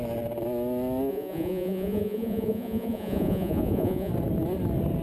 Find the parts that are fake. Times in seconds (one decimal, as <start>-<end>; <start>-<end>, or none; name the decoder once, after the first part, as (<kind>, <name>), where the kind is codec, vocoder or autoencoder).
1.1-4.1 (vocoder, Vocos)